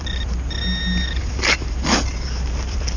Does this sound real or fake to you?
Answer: fake